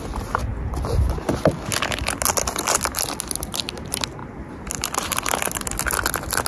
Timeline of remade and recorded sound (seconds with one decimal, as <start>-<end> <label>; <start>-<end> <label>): 0.0-6.5 recorded